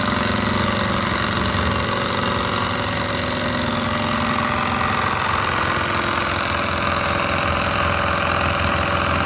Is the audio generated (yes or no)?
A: no